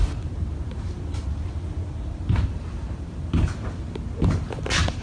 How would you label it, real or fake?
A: real